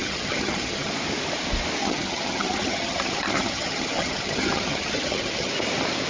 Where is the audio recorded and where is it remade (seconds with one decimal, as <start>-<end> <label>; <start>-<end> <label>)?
0.0-0.9 remade; 0.9-1.8 recorded; 1.8-5.5 remade; 5.5-6.1 recorded